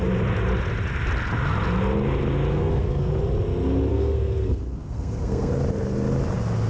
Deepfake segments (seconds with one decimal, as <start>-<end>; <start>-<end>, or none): 2.5-3.1; 3.9-5.5